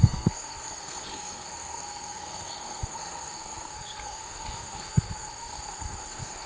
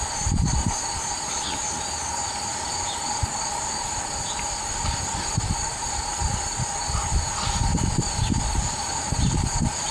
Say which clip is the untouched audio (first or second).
second